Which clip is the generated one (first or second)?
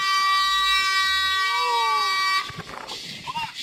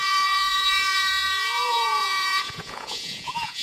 second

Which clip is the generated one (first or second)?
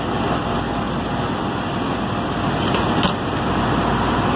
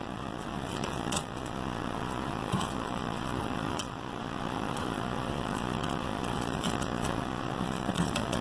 second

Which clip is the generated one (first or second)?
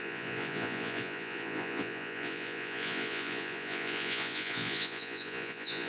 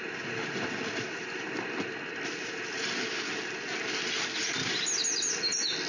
first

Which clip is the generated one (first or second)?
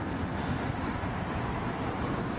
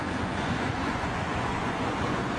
second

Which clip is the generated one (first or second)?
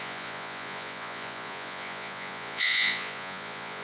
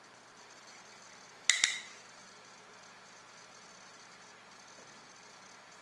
first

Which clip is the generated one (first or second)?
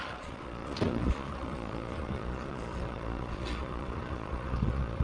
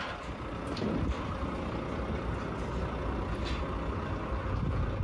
first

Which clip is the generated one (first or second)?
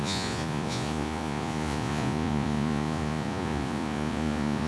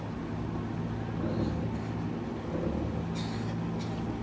first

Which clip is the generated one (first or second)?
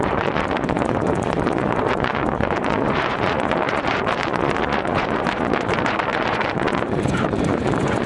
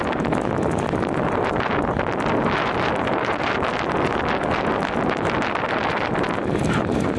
first